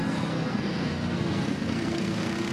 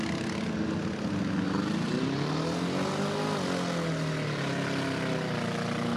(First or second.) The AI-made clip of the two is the first